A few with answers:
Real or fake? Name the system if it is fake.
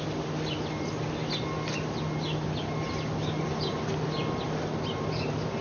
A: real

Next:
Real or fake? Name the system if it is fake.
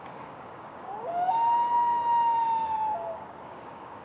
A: fake, codec, DAC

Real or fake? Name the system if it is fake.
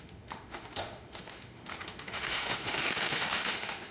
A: fake, autoencoder, DAC-VAE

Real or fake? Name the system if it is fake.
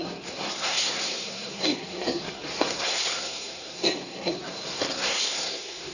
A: fake, codec, SNAC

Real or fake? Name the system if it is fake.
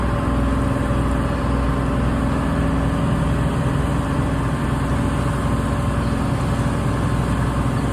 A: real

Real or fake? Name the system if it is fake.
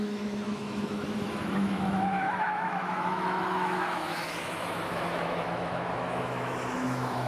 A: fake, autoencoder, DAC-VAE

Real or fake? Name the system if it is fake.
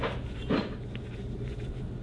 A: fake, vocoder, BigVGAN v2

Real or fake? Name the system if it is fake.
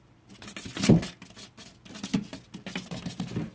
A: real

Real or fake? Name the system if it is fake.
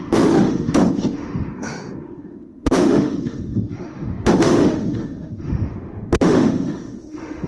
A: fake, autoencoder, DAC-VAE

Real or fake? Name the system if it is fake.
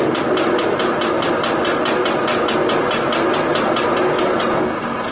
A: real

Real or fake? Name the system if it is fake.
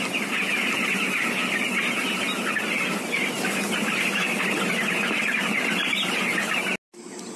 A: real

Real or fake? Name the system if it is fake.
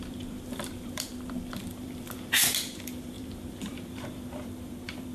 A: fake, vocoder, BigVGAN v2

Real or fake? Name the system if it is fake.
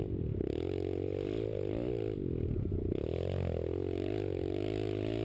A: real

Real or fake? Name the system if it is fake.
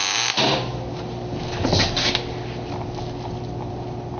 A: real